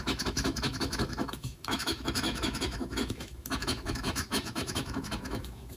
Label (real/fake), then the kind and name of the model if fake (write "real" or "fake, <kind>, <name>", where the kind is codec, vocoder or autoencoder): fake, autoencoder, DAC-VAE